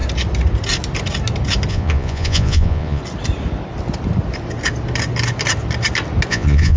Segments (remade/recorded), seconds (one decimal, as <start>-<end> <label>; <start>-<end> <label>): 0.0-1.7 recorded; 1.7-3.0 remade; 3.0-6.3 recorded; 6.3-6.8 remade